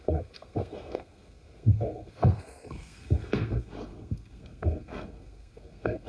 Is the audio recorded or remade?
remade